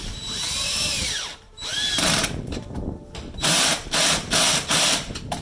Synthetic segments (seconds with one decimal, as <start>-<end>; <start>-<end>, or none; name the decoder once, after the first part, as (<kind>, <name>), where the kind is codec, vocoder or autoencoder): 0.0-5.4 (vocoder, BigVGAN v2)

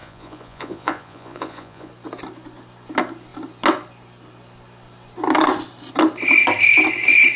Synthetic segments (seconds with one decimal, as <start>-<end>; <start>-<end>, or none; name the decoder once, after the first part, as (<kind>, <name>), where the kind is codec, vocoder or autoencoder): 0.0-1.9 (vocoder, Vocos)

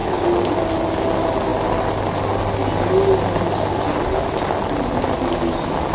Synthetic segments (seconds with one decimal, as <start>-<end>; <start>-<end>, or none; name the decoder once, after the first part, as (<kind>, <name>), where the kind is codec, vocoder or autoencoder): none